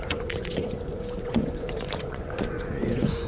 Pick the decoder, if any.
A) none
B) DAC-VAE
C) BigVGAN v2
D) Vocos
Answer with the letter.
D